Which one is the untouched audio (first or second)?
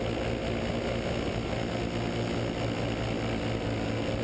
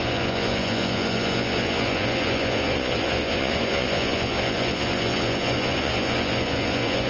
first